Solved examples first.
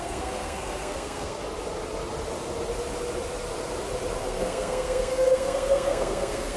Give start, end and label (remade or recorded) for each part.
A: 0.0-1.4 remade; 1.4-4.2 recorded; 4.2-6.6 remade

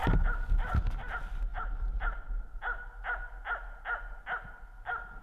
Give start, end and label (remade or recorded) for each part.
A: 0.0-5.2 recorded

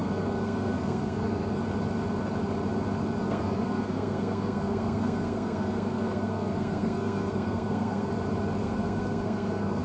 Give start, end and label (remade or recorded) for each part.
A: 0.0-1.6 remade; 1.6-3.2 recorded; 3.2-8.1 remade; 8.1-8.6 recorded; 8.6-9.8 remade

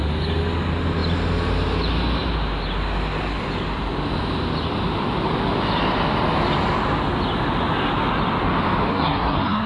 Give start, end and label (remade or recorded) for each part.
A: 0.0-8.9 recorded; 8.9-9.7 remade

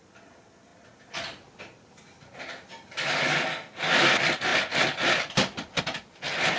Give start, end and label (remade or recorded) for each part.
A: 0.0-6.6 recorded

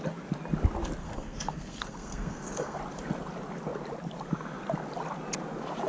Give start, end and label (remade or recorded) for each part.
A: 0.0-1.0 recorded; 1.0-2.8 remade; 2.8-5.9 recorded

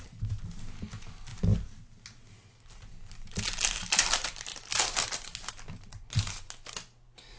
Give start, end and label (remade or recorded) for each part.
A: 0.0-7.4 recorded